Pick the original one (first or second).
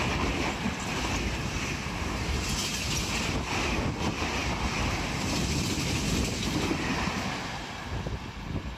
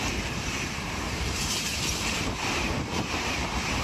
first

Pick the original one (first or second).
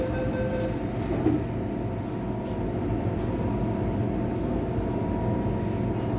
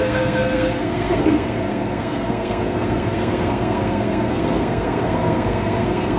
first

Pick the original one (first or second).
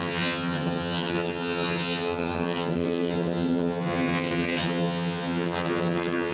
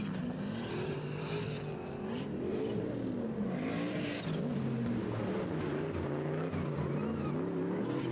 second